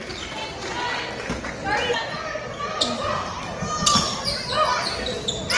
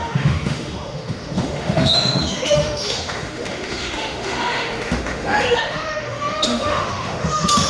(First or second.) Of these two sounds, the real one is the first